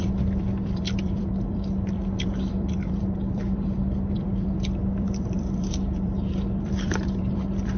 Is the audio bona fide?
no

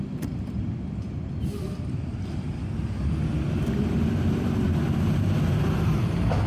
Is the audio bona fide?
no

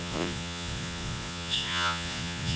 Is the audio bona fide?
no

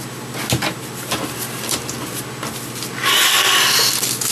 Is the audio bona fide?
yes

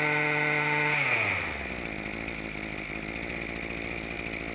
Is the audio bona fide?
yes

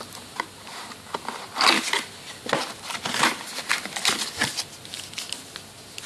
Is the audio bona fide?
yes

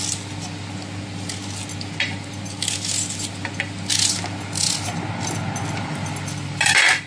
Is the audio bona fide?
yes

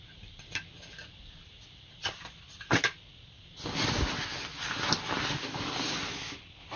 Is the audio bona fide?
yes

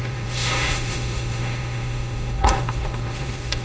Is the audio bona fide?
no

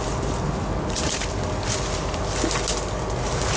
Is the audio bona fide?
yes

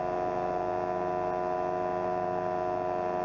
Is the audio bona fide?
yes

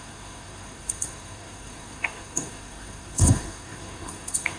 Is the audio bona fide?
no